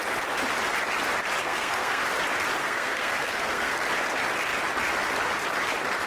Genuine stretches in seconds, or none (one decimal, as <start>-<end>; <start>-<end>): 0.0-1.4; 2.0-2.6; 3.8-6.1